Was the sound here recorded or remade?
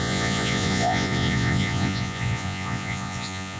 remade